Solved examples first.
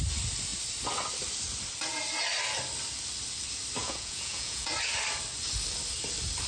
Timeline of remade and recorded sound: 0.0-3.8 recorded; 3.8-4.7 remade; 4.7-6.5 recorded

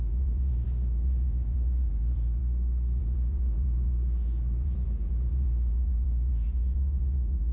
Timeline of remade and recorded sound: 0.0-2.4 remade; 2.4-3.0 recorded; 3.0-7.5 remade

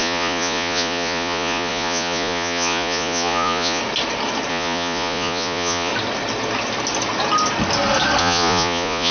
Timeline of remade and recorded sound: 0.0-3.8 remade; 3.8-4.5 recorded; 4.5-5.9 remade; 5.9-8.2 recorded; 8.2-9.1 remade

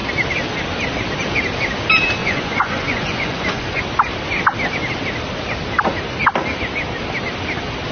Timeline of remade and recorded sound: 0.0-2.2 recorded; 2.2-3.8 remade; 3.8-7.9 recorded

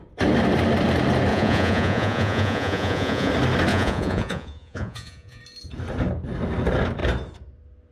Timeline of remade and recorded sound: 0.0-1.3 recorded; 1.3-3.3 remade; 3.3-3.7 recorded; 3.7-5.4 remade; 5.4-7.9 recorded

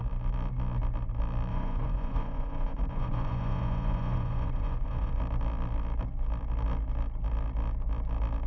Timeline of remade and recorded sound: 0.0-1.5 recorded; 1.5-5.2 remade; 5.2-8.5 recorded